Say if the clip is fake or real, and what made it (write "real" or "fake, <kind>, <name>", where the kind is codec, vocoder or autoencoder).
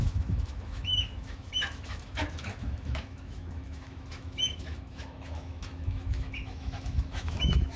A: fake, autoencoder, DAC-VAE